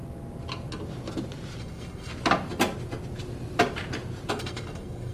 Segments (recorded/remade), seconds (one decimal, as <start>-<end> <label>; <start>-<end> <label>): 0.0-1.6 recorded; 1.6-2.1 remade; 2.1-4.3 recorded; 4.3-5.1 remade